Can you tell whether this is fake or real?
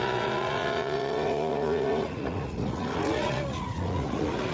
fake